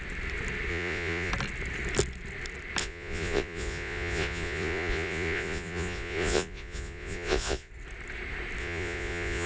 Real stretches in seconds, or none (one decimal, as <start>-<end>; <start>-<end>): 0.0-0.7; 1.3-2.8; 7.7-8.6